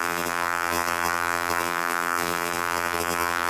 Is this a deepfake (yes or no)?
yes